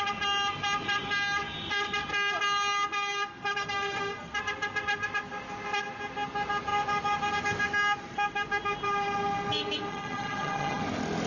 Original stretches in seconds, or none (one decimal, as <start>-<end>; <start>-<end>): 0.0-9.9; 10.8-11.3